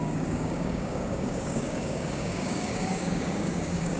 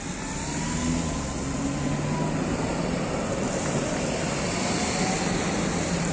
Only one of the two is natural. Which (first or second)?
second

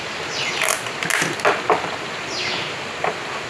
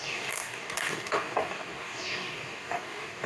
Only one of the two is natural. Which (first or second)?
first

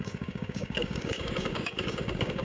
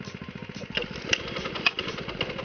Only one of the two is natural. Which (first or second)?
second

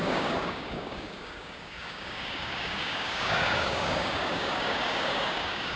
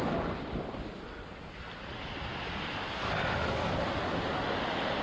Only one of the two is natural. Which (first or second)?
second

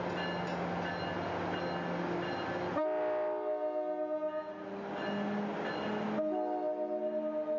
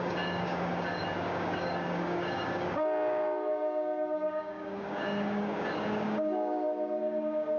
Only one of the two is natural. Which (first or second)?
first